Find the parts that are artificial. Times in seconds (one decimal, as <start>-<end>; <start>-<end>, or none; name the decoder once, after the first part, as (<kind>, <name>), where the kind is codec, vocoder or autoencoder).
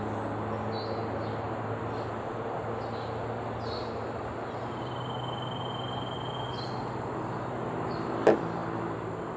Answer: none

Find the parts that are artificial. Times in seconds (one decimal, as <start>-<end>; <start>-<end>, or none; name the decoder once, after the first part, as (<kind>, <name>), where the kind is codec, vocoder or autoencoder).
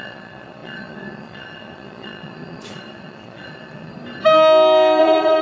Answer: 0.0-3.9 (vocoder, Vocos); 5.0-5.4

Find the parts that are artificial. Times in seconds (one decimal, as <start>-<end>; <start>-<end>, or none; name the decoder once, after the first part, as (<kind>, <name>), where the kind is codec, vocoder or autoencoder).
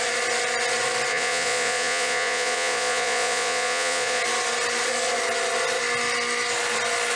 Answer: 1.1-4.2 (vocoder, Vocos)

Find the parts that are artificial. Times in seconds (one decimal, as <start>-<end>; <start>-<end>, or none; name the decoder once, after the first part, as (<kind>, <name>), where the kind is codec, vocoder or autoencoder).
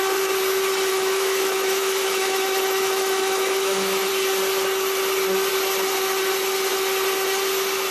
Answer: 0.9-4.1 (autoencoder, DAC-VAE)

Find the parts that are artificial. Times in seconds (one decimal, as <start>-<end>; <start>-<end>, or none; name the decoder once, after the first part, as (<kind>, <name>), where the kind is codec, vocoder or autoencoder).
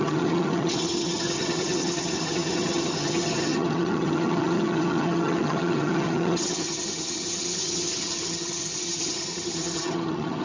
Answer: 0.0-10.4 (vocoder, HiFi-GAN)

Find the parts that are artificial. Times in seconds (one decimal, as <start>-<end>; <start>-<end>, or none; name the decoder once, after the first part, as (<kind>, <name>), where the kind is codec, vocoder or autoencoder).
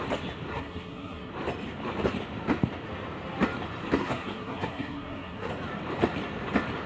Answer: 0.5-1.3 (codec, SNAC); 4.0-5.5